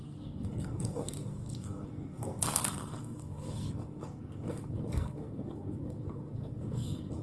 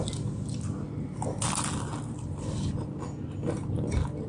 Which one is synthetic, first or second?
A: first